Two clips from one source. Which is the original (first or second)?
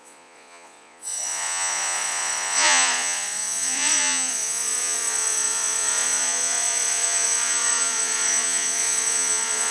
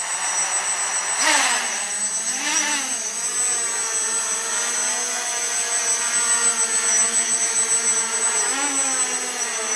second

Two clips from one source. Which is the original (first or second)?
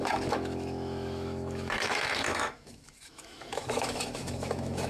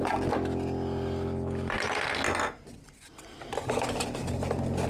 second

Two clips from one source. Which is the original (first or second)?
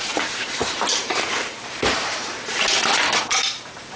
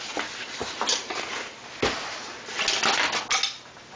second